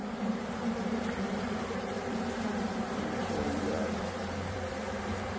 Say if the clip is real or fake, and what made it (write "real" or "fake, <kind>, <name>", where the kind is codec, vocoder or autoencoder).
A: fake, vocoder, BigVGAN v2